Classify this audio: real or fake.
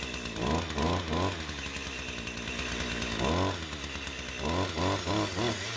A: real